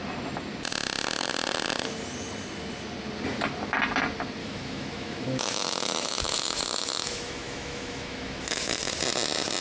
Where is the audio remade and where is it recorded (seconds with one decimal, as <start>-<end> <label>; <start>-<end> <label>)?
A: 0.0-4.4 recorded; 4.4-8.9 remade; 8.9-9.6 recorded